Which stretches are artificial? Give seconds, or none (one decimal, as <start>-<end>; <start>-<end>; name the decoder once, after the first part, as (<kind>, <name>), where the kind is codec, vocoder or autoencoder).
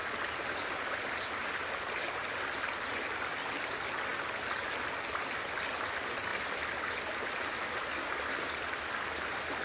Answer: none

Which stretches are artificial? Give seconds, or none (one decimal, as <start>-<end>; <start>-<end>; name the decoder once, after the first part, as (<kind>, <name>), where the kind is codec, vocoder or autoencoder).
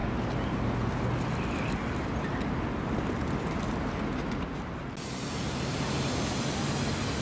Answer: none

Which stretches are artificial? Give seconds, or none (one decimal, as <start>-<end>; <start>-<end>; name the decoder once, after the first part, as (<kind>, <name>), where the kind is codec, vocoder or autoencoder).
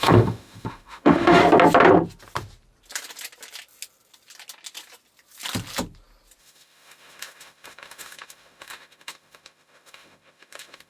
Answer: 0.0-1.4 (autoencoder, DAC-VAE); 6.4-10.9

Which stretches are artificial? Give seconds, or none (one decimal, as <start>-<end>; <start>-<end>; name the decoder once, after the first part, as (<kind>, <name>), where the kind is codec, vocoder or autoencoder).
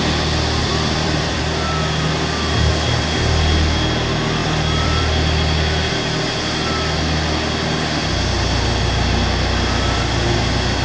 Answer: 0.6-1.4 (vocoder, BigVGAN v2); 4.4-5.0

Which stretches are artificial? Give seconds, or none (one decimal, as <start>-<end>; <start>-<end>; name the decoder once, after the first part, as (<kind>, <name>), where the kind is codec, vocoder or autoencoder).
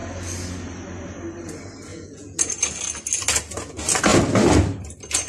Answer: 1.9-2.5 (vocoder, Vocos)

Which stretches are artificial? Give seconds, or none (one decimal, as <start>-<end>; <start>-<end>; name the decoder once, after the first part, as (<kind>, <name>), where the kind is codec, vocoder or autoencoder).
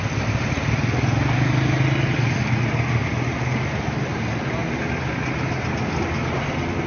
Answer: none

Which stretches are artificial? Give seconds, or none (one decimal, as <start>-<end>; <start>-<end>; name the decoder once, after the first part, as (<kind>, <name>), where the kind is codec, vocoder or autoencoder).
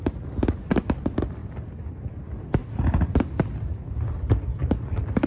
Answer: 0.0-1.4 (vocoder, BigVGAN v2); 1.9-2.6; 3.8-5.3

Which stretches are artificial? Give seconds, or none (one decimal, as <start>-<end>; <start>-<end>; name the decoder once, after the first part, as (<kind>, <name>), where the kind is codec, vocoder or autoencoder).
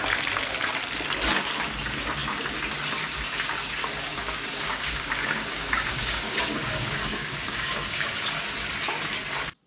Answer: 4.1-8.1 (codec, DAC)